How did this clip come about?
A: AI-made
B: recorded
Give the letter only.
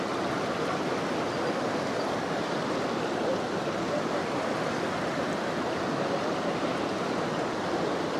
B